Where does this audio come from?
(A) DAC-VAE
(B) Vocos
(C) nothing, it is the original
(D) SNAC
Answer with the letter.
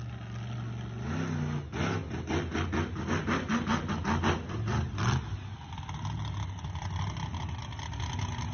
C